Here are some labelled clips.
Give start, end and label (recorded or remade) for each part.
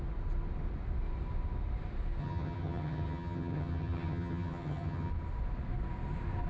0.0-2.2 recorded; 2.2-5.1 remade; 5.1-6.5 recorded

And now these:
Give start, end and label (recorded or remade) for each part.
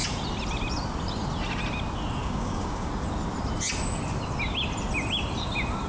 0.0-2.2 recorded; 2.2-2.9 remade; 2.9-5.9 recorded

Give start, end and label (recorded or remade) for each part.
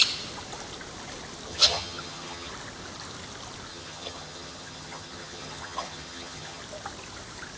0.0-1.5 recorded; 1.5-2.5 remade; 2.5-3.7 recorded; 3.7-6.6 remade; 6.6-7.6 recorded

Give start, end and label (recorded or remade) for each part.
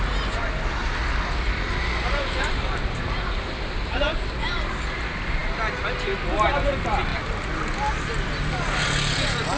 0.0-9.6 recorded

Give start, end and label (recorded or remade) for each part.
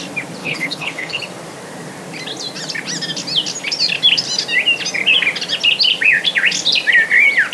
0.0-0.4 recorded; 0.4-1.2 remade; 1.2-7.5 recorded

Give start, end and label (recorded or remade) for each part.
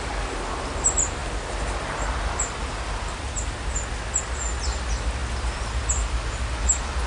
0.0-7.1 recorded